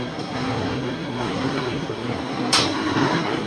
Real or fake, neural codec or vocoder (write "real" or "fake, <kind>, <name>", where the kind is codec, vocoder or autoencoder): fake, codec, SNAC